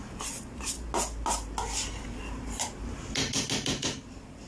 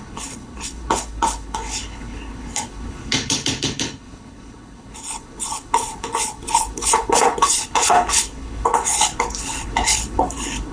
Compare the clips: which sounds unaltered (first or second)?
first